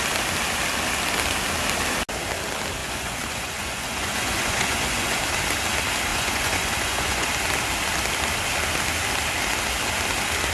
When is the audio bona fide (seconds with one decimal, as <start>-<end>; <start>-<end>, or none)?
0.0-2.8; 5.2-6.1; 7.3-10.5